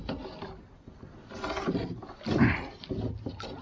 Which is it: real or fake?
real